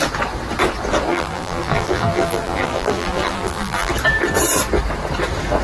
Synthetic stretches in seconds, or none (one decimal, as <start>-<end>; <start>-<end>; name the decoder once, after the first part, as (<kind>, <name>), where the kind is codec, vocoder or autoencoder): 1.1-3.9 (vocoder, BigVGAN v2)

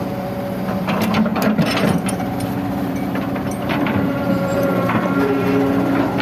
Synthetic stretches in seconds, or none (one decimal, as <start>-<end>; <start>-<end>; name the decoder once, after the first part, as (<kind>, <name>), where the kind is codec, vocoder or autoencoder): 1.3-5.0 (vocoder, BigVGAN v2)

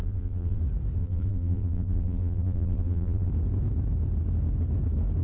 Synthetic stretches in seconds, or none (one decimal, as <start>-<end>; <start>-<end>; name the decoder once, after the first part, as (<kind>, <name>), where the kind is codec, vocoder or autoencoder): 0.0-0.6 (vocoder, BigVGAN v2); 1.0-3.3

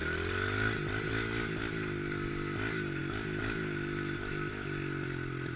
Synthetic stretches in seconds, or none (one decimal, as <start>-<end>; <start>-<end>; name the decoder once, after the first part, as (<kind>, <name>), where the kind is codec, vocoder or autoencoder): none

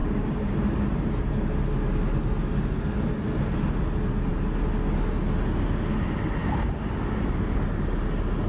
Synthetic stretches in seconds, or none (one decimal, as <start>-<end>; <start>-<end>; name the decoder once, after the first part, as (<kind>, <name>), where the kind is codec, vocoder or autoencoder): 0.0-1.3 (vocoder, BigVGAN v2)

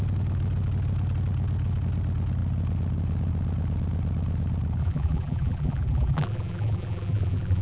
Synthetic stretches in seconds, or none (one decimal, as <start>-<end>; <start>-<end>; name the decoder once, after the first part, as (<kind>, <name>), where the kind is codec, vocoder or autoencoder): 4.8-7.6 (vocoder, BigVGAN v2)

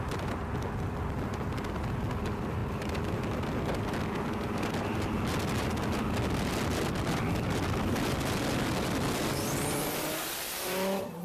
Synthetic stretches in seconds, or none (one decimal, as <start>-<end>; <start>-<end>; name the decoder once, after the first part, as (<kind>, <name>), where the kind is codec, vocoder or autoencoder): none

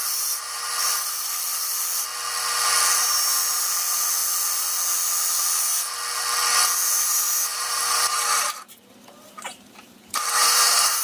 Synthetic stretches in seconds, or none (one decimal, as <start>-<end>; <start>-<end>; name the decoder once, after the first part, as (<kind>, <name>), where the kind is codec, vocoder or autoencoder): 0.0-0.7 (vocoder, BigVGAN v2); 7.5-11.0